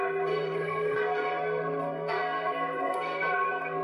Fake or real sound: fake